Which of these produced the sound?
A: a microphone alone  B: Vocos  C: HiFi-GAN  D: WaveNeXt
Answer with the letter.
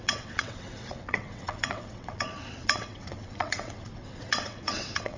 D